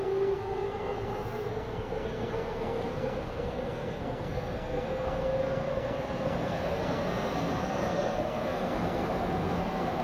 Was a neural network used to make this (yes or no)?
yes